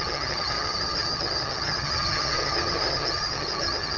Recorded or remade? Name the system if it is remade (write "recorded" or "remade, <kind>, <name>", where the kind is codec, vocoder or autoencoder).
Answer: remade, vocoder, HiFi-GAN